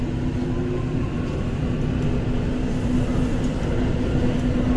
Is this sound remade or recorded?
recorded